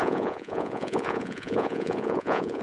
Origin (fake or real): fake